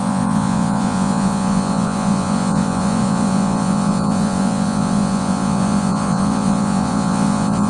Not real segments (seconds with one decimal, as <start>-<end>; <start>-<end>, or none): 0.0-7.7